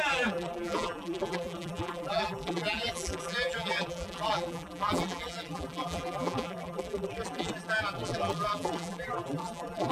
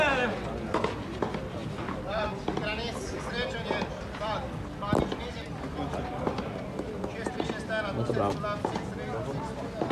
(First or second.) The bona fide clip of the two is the second